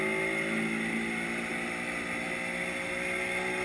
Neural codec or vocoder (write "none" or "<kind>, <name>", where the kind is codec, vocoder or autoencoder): none